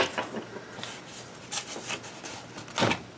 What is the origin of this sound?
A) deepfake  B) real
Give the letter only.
B